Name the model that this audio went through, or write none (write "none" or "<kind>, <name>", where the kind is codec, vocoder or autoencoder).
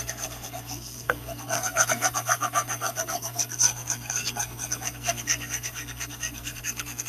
codec, SNAC